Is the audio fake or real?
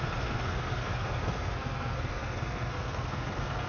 fake